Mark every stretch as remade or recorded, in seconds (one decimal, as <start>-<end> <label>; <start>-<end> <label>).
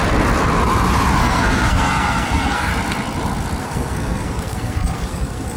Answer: 0.0-1.2 recorded; 1.2-2.7 remade; 2.7-3.6 recorded; 3.6-5.6 remade